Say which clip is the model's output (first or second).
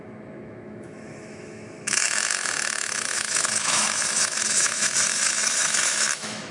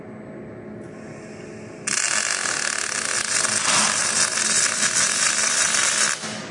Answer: first